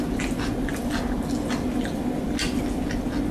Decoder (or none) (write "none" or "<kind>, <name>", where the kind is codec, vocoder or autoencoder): none